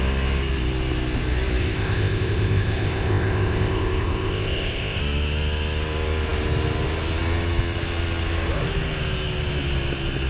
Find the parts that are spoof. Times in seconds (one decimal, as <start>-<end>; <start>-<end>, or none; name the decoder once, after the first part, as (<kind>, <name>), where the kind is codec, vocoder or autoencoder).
1.6-5.0 (codec, ZipCodec)